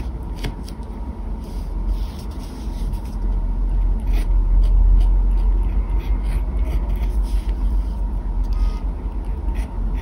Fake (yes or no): no